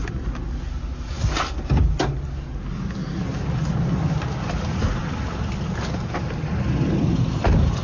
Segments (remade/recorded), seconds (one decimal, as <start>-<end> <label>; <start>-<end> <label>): 0.0-7.8 recorded